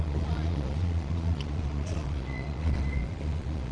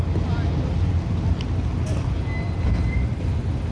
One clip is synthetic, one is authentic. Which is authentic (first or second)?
second